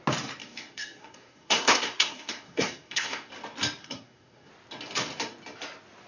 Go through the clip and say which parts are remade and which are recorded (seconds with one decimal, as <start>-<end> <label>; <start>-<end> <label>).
0.0-0.4 recorded; 0.4-3.3 remade; 3.3-3.8 recorded; 3.8-4.5 remade; 4.5-6.1 recorded